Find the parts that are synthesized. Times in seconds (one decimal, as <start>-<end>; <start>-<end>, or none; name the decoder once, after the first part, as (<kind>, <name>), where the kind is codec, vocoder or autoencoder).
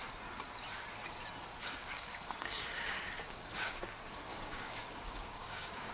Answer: 1.6-3.8 (codec, DAC); 4.3-5.9